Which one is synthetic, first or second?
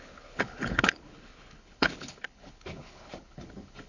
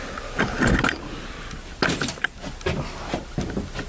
first